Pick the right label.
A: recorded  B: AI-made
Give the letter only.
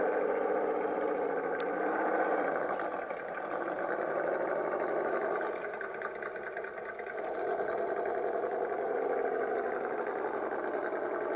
B